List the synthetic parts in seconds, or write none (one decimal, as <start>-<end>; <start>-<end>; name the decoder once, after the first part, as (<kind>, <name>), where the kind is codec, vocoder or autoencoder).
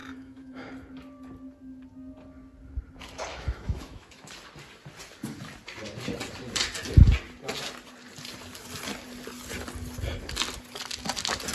0.0-0.7 (autoencoder, DAC-VAE); 3.3-4.3